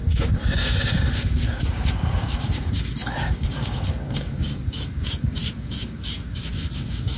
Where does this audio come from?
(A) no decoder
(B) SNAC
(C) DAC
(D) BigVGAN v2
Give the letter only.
C